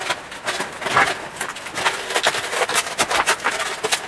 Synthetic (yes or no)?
no